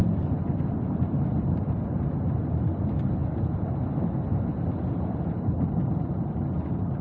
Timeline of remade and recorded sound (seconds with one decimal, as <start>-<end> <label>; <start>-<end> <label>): 0.0-7.0 recorded